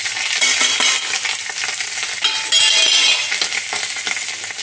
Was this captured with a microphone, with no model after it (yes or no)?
yes